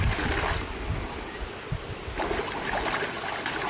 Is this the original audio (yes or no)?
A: yes